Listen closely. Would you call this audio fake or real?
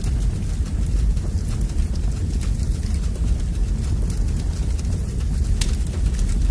real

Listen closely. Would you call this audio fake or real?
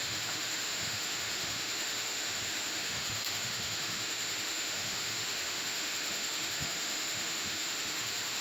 fake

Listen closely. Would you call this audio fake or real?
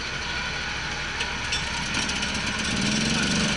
real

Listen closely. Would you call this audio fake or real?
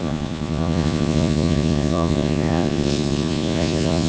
fake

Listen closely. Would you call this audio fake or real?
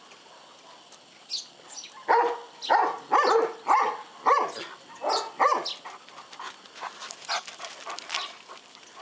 real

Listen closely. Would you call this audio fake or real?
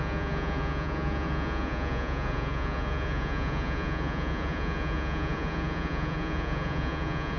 fake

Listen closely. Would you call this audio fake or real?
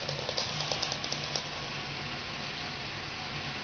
real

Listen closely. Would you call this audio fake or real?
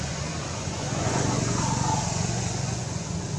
fake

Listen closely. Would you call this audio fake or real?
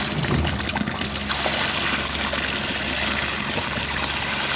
real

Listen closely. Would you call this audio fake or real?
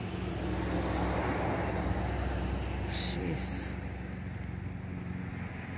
real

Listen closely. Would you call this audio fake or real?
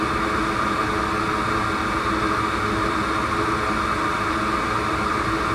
real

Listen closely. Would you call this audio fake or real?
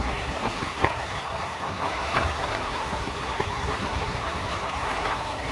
fake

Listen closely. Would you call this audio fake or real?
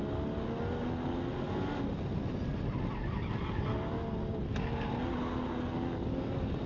real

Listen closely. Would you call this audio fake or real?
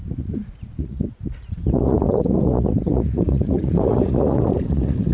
fake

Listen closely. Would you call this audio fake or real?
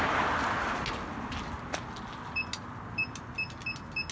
real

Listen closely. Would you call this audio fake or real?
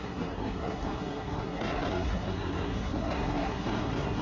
fake